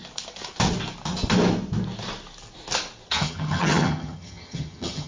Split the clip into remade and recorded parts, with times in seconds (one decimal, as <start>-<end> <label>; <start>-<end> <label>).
0.0-3.1 recorded; 3.1-5.1 remade